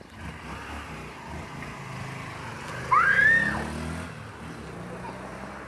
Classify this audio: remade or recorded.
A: recorded